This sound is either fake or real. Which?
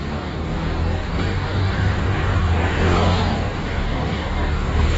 fake